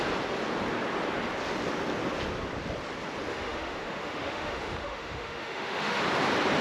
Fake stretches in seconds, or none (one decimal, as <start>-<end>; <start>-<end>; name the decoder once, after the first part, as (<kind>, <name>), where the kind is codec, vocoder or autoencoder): 3.3-6.0 (autoencoder, DAC-VAE)